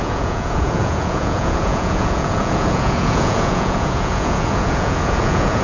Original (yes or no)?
no